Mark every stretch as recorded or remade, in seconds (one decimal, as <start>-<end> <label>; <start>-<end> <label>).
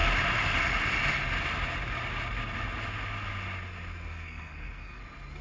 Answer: 0.0-4.1 recorded; 4.1-5.0 remade; 5.0-5.4 recorded